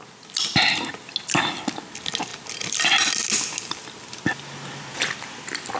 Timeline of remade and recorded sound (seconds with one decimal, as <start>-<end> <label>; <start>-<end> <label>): 0.0-5.8 recorded